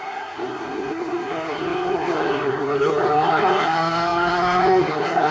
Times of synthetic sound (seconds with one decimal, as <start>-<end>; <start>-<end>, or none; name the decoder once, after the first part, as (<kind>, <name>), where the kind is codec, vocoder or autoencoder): 0.0-5.3 (codec, SNAC)

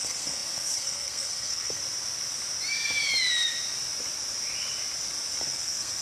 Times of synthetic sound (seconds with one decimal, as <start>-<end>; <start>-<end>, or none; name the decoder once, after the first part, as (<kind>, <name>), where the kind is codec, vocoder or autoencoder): 0.0-1.8 (codec, SNAC); 5.4-6.0

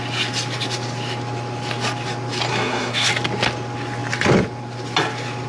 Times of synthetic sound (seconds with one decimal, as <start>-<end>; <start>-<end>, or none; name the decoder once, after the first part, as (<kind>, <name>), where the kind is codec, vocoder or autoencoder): 2.5-3.1 (codec, SNAC)

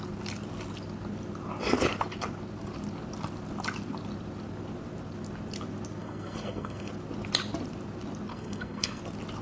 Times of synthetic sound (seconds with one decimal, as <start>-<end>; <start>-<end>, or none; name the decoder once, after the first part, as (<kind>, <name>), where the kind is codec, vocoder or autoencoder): 6.0-6.9 (codec, SNAC); 8.3-9.0